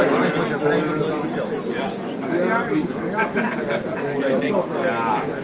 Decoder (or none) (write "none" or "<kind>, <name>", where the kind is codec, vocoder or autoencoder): none